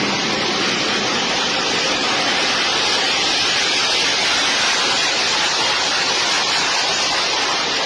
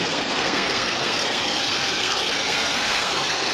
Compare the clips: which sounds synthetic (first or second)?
second